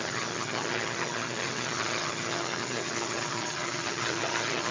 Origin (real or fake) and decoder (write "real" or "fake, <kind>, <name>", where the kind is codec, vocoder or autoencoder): fake, vocoder, HiFi-GAN